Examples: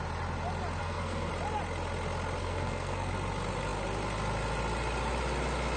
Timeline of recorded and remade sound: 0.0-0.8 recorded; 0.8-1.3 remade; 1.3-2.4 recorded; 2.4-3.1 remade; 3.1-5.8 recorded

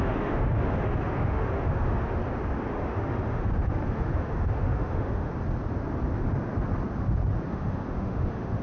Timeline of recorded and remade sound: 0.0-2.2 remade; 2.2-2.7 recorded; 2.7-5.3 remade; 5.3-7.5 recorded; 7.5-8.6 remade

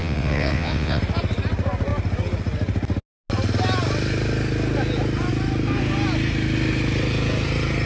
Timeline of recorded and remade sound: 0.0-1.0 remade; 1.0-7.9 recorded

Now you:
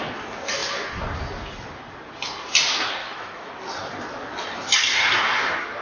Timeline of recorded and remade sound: 0.0-3.0 recorded; 3.0-3.5 remade; 3.5-5.8 recorded

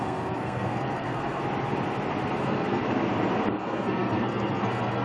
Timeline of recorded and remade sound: 0.0-1.4 remade; 1.4-2.4 recorded; 2.4-2.8 remade; 2.8-3.5 recorded; 3.5-5.0 remade